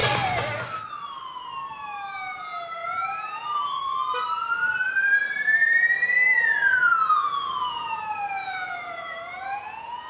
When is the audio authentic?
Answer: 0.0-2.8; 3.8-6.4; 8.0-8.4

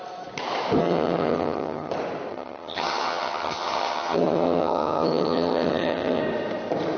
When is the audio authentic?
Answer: 0.0-0.8; 1.9-2.3; 6.2-7.0

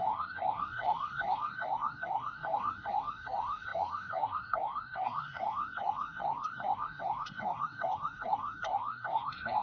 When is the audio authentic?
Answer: none

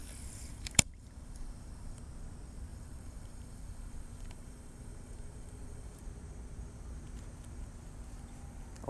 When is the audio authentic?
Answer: 2.0-2.7; 6.0-8.9

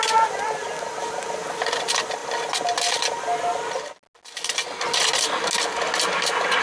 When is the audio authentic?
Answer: 0.0-6.6

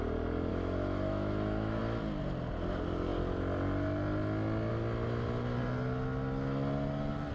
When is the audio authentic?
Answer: 0.0-0.5; 1.8-7.3